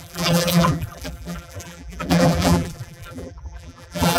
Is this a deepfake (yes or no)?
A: yes